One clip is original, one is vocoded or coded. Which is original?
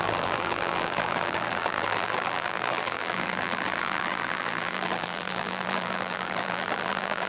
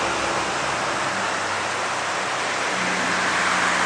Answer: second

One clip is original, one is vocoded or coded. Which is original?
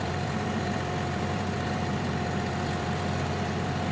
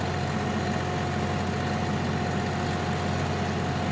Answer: second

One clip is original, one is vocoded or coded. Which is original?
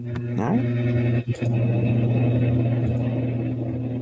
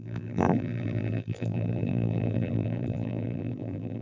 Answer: first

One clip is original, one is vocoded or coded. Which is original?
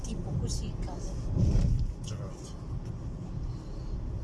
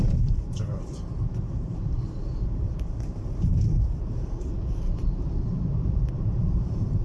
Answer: first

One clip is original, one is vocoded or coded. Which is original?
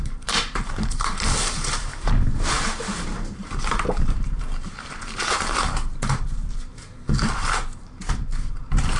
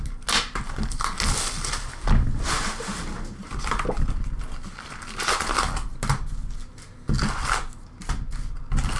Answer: second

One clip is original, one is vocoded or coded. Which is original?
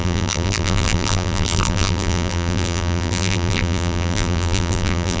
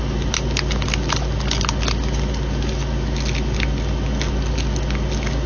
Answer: second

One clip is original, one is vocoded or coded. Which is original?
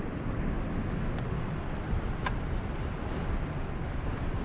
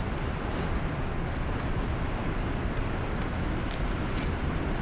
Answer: second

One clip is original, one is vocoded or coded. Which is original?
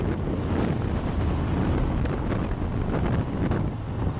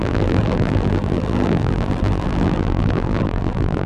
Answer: first